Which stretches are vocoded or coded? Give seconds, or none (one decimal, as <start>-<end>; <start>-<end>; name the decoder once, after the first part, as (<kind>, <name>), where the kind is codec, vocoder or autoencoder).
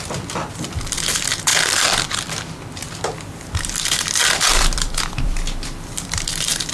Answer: 0.0-1.5 (vocoder, BigVGAN v2); 2.7-6.7